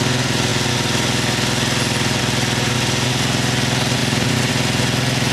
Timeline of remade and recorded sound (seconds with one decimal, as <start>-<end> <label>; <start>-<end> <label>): 0.0-4.0 recorded; 4.0-4.5 remade; 4.5-5.3 recorded